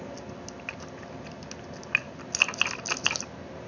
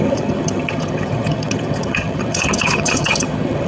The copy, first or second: second